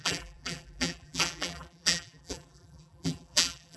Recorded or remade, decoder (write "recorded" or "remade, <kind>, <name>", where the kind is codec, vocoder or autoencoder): remade, vocoder, BigVGAN v2